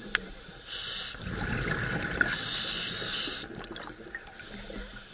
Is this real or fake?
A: real